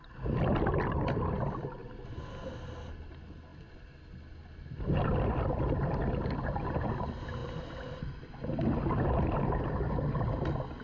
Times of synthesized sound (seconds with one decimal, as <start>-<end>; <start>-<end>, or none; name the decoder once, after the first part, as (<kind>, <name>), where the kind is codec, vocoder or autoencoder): none